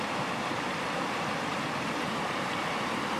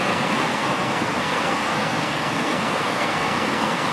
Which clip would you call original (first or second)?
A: first